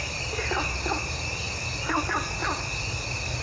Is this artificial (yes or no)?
no